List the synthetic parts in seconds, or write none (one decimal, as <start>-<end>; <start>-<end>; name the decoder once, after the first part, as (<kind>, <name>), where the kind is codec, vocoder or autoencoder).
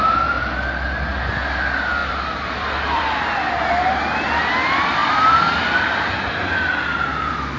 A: 2.0-3.5 (vocoder, BigVGAN v2); 5.0-6.1